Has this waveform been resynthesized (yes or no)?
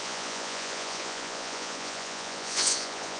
yes